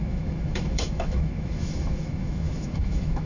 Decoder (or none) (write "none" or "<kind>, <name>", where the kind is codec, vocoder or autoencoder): autoencoder, DAC-VAE